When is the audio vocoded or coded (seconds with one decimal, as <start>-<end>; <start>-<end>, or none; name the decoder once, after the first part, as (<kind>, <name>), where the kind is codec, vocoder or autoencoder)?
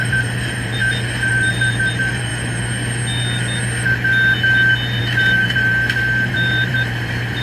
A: 0.0-0.8 (vocoder, BigVGAN v2); 1.3-2.3; 5.0-5.7; 6.3-7.4